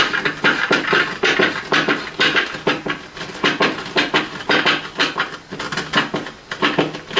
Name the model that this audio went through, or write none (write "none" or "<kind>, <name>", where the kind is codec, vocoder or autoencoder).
none